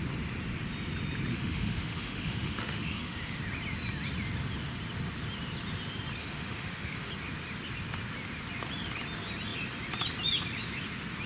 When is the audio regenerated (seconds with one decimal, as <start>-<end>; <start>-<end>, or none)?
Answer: 1.3-3.4; 6.2-7.1